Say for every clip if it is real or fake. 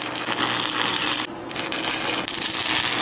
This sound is real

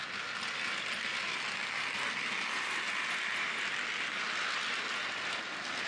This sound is real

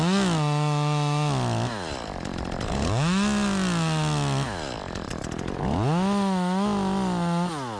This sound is real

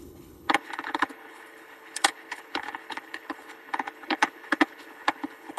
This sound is fake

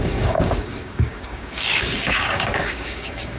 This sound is fake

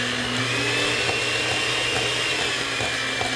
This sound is real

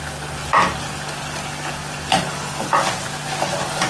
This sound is real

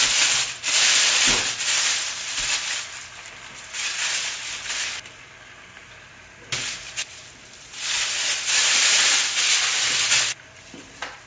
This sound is fake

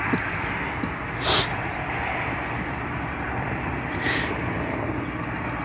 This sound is real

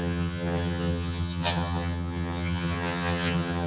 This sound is fake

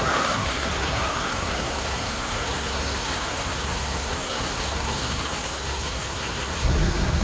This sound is fake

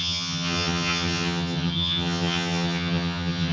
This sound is fake